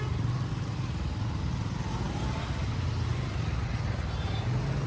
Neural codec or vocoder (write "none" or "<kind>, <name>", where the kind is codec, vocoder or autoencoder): none